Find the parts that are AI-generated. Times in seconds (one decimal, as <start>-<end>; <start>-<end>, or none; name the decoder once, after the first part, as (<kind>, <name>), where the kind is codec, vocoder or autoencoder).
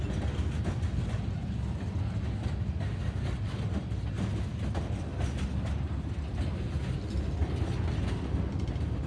none